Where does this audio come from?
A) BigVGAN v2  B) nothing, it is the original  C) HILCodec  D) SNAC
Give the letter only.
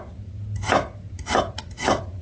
B